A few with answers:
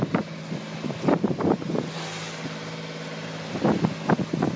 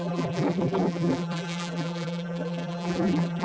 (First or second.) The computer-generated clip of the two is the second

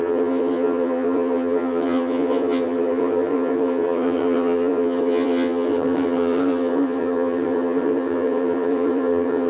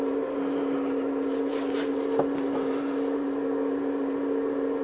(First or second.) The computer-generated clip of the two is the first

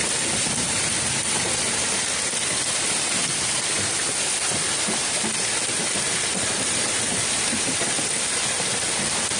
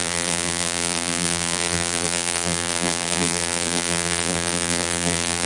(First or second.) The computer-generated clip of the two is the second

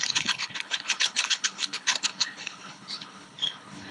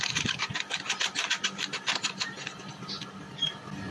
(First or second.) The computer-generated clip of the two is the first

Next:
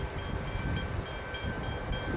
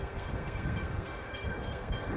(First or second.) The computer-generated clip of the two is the second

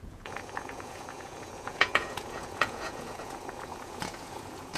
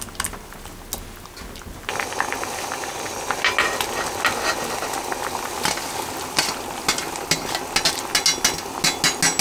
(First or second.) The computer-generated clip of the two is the first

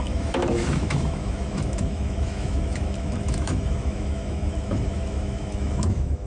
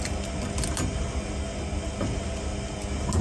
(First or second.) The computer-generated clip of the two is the first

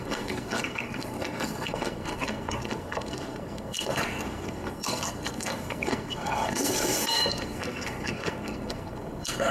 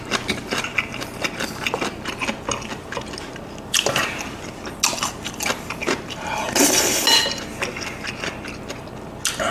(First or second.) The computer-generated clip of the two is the first